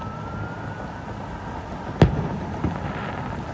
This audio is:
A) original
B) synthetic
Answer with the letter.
B